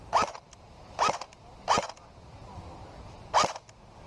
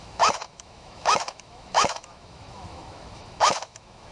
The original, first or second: first